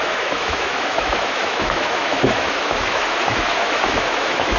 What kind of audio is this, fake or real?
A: fake